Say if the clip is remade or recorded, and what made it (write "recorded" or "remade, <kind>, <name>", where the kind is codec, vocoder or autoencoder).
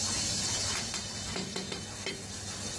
recorded